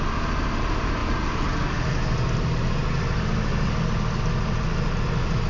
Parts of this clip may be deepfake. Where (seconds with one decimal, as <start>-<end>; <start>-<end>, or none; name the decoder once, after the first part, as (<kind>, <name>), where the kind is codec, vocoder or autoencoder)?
none

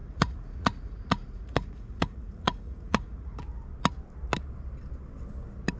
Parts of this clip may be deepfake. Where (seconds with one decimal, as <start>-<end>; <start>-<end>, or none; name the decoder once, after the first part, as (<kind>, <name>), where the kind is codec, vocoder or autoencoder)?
0.0-3.4 (vocoder, Vocos)

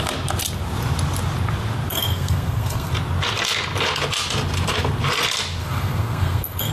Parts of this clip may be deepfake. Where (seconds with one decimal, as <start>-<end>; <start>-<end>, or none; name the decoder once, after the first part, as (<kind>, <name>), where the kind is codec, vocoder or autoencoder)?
1.9-2.9 (codec, SNAC); 5.6-6.7

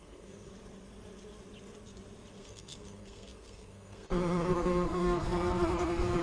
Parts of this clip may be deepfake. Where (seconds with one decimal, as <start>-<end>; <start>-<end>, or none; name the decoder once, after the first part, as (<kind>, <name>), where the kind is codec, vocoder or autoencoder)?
0.0-0.5 (codec, SNAC); 2.4-6.2

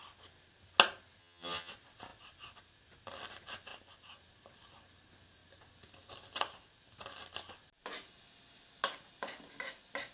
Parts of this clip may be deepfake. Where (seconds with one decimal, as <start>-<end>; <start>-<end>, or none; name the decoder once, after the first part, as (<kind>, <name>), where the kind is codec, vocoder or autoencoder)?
1.2-1.7 (vocoder, HiFi-GAN)